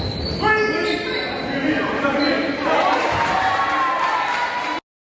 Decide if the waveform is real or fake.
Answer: real